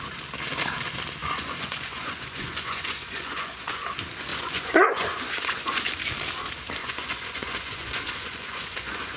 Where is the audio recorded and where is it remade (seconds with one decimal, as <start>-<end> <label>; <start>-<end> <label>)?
0.0-1.2 recorded; 1.2-3.8 remade; 3.8-4.3 recorded; 4.3-5.8 remade; 5.8-6.8 recorded; 6.8-9.2 remade